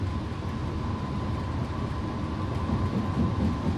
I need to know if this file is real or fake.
real